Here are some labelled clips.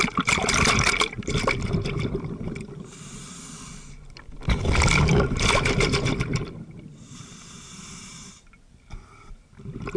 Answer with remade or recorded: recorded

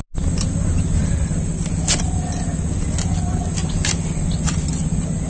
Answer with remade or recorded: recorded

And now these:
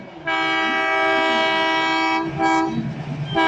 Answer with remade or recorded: recorded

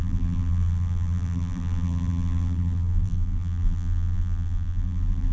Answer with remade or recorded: remade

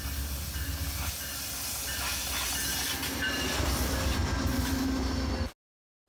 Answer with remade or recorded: recorded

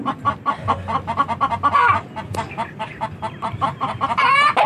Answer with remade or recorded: recorded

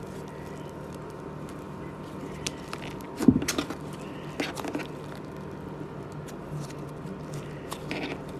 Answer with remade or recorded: recorded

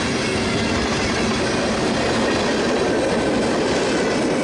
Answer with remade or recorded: recorded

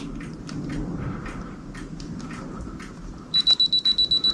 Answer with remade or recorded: recorded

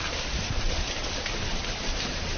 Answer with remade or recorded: recorded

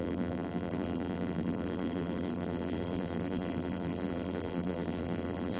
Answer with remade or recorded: remade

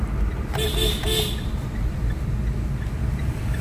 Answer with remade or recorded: recorded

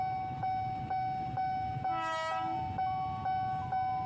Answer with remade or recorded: recorded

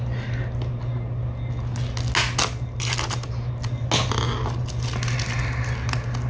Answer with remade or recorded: recorded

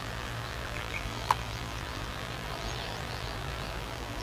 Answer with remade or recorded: remade